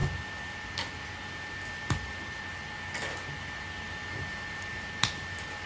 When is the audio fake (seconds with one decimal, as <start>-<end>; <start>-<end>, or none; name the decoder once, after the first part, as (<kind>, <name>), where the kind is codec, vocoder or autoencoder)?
none